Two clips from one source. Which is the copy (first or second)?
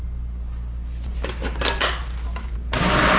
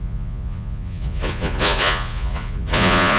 second